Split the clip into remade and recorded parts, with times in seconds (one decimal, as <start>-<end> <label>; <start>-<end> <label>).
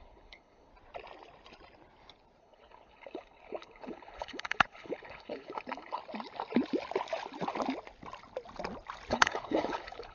0.0-0.7 remade; 0.7-2.4 recorded; 2.4-6.0 remade; 6.0-9.1 recorded; 9.1-10.1 remade